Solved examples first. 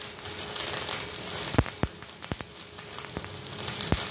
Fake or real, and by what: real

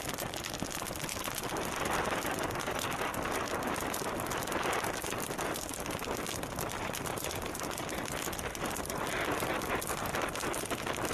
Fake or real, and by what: real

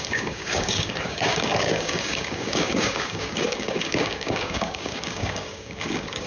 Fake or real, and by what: fake, codec, DAC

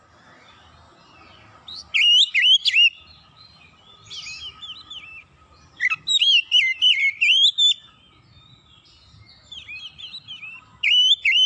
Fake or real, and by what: real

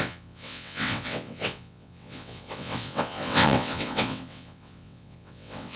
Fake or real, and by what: fake, vocoder, WaveNeXt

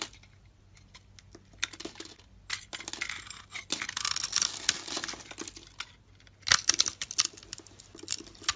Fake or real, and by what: real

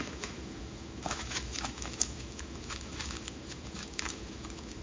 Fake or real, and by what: fake, autoencoder, DAC-VAE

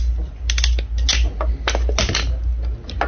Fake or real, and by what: real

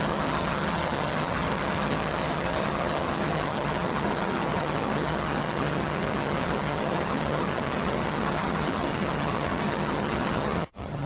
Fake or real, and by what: fake, vocoder, HiFi-GAN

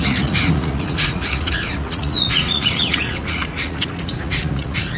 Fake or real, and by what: fake, vocoder, Vocos